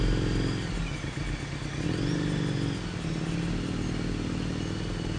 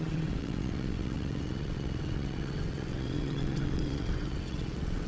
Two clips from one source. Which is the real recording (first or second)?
first